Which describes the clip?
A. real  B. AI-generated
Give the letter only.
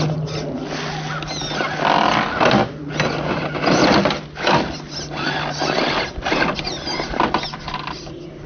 A